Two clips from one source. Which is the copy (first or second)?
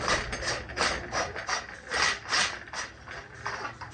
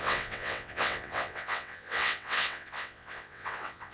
second